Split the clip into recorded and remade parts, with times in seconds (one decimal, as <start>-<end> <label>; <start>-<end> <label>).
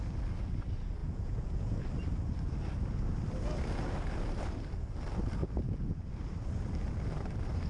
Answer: 0.0-1.0 recorded; 1.0-1.8 remade; 1.8-5.4 recorded; 5.4-6.0 remade; 6.0-7.7 recorded